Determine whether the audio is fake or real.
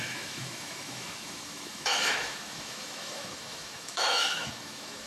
fake